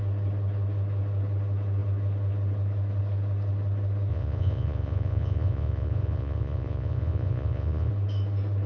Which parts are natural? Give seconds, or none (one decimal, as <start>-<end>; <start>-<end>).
0.0-4.1; 7.9-8.7